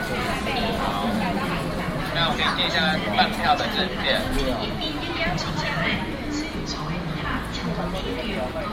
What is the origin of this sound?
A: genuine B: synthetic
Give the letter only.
A